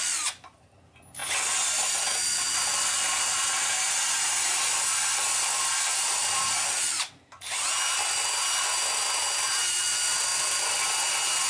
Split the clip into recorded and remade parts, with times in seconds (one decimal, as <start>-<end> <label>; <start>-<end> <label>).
0.0-11.5 recorded